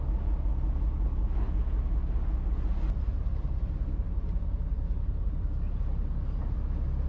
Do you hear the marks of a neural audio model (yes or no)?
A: no